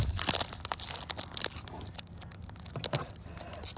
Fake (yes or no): no